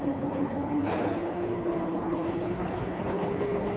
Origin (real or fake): fake